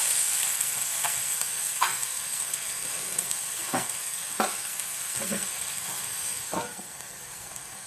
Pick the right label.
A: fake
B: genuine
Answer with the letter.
A